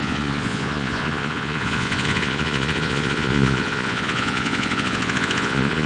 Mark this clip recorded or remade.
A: remade